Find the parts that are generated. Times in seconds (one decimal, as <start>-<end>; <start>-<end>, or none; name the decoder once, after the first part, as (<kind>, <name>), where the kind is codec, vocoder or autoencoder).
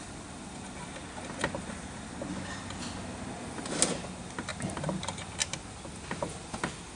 none